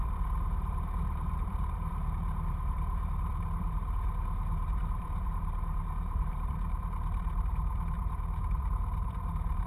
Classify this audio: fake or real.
fake